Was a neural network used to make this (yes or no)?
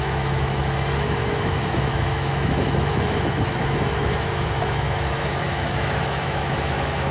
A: yes